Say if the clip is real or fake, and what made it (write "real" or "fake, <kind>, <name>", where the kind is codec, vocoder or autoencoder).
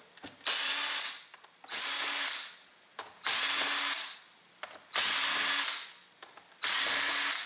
real